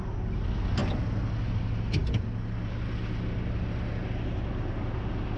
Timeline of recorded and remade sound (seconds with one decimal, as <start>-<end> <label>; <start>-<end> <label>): 0.0-5.4 recorded